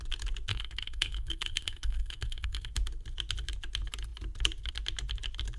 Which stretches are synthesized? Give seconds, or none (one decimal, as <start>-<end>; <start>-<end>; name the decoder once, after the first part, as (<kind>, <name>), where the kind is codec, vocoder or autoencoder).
0.5-2.7 (codec, SNAC)